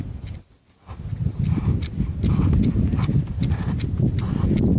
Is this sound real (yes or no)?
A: yes